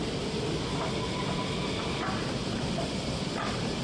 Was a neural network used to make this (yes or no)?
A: no